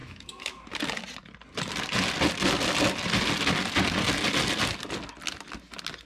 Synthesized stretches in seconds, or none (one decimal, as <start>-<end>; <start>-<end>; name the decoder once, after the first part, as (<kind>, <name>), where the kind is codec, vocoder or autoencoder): 0.0-0.7 (autoencoder, DAC-VAE)